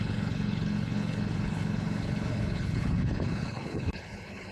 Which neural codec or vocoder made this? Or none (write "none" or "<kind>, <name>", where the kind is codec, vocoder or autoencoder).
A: codec, HILCodec